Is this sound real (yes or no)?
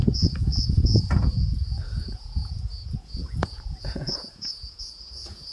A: no